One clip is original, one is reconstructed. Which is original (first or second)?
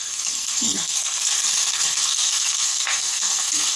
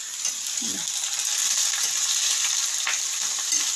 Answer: second